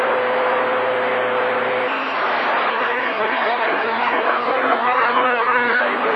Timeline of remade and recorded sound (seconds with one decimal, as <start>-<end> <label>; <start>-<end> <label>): 0.0-2.7 recorded; 2.7-5.8 remade; 5.8-6.2 recorded